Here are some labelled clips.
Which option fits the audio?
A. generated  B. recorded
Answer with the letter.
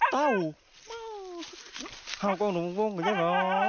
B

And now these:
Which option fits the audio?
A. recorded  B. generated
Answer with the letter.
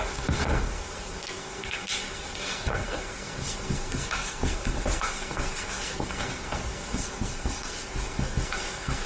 B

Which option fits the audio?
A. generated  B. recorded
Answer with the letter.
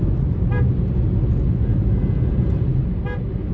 B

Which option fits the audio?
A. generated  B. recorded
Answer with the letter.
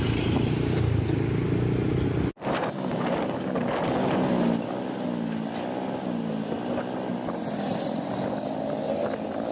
B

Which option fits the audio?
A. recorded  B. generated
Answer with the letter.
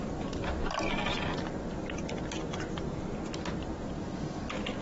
A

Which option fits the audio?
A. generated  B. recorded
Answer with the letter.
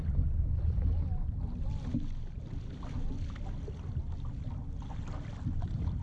B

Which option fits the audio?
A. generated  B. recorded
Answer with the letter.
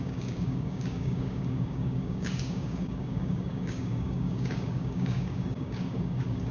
A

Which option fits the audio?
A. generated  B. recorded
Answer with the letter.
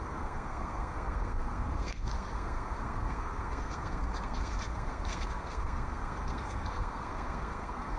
A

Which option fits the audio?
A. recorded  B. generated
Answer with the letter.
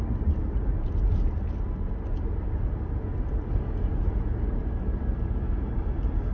A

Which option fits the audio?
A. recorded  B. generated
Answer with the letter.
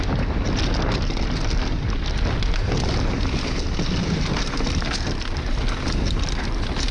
A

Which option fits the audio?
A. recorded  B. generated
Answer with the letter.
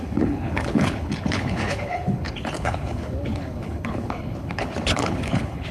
B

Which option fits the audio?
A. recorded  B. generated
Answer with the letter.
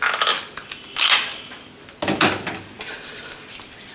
A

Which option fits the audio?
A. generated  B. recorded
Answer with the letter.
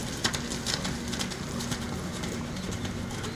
B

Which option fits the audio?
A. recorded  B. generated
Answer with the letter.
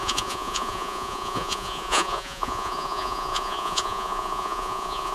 B